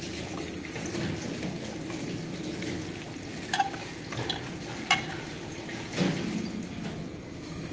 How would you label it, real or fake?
real